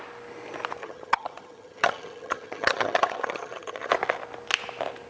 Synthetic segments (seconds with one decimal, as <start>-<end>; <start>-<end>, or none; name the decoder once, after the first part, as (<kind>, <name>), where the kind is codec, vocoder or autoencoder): 0.8-3.9 (vocoder, HiFi-GAN)